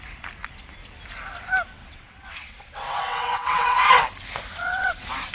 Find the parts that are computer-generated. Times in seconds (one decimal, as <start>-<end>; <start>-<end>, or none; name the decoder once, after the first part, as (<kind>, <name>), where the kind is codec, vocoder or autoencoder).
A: 1.8-4.0 (vocoder, WaveNeXt); 4.6-5.3